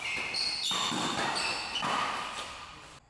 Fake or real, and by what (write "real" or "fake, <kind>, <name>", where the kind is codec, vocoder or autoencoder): real